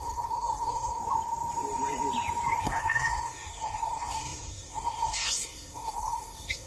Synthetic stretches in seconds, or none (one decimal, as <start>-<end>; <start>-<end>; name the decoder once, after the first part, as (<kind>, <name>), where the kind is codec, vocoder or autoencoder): 0.0-1.0 (codec, SNAC); 2.6-6.7